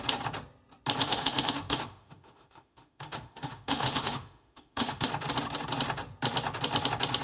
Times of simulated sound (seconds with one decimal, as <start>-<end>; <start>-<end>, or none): 1.0-5.1